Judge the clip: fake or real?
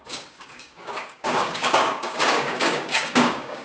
fake